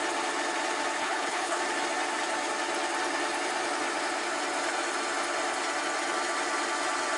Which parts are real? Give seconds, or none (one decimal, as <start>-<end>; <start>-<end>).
0.0-1.0; 1.6-7.2

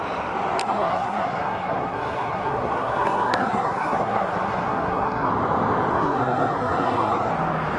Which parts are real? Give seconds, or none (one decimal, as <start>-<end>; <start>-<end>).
0.0-0.6; 5.3-5.9; 7.3-7.8

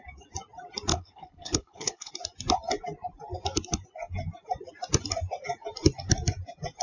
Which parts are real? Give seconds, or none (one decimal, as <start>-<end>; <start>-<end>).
0.0-0.9; 2.1-6.8

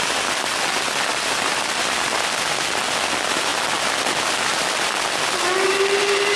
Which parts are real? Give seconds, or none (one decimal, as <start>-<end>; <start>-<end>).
0.0-6.4

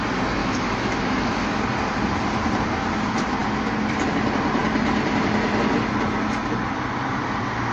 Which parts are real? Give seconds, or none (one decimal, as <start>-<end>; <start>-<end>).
0.0-0.4; 1.6-7.7

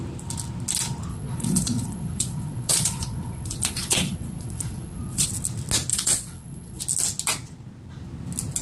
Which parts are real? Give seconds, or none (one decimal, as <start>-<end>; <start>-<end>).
0.0-1.1; 5.3-5.9; 6.8-8.6

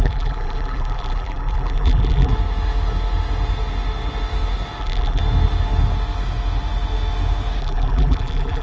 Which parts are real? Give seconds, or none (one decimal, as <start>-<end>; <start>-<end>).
2.3-4.8; 5.2-7.6